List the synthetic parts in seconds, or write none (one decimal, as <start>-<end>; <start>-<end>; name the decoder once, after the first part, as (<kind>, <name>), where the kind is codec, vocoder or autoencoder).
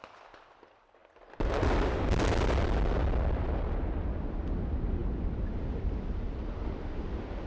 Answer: none